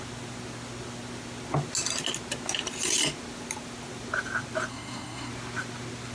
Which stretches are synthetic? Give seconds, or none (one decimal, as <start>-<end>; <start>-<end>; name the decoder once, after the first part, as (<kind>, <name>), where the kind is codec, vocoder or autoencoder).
4.7-5.3 (codec, SNAC)